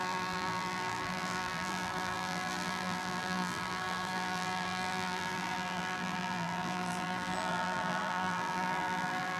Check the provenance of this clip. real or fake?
fake